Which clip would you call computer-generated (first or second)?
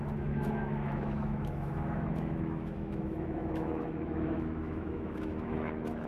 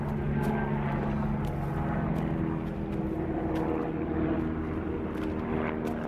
first